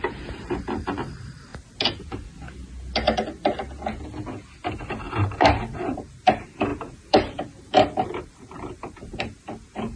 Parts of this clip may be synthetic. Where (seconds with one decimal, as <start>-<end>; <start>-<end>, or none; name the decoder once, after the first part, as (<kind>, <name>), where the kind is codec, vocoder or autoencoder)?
0.0-1.5 (vocoder, BigVGAN v2); 5.1-10.0

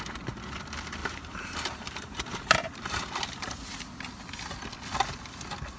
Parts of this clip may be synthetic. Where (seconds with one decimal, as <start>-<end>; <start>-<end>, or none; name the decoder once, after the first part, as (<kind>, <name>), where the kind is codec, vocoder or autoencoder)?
1.0-3.2 (vocoder, BigVGAN v2)